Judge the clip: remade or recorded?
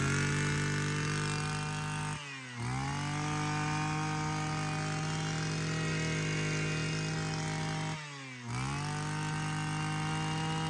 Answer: recorded